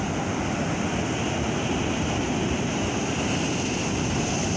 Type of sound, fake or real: real